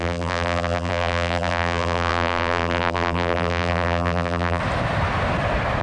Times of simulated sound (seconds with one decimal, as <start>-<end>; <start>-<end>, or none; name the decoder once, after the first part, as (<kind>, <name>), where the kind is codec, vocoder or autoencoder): 0.0-4.6 (vocoder, BigVGAN v2)